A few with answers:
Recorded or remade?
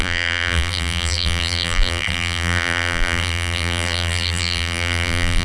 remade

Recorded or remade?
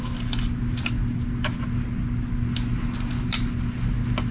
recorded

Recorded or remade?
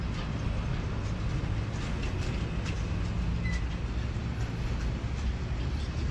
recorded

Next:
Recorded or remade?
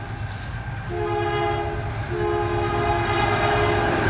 recorded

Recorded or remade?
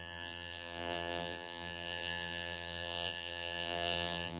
remade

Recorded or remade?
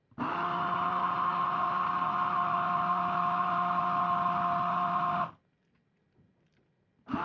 remade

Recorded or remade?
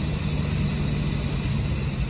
recorded